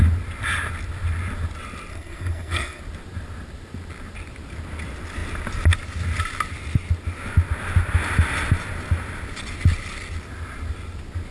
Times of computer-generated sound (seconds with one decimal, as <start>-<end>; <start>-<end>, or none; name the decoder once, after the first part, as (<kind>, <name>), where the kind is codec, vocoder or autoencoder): 1.9-2.8 (codec, SNAC)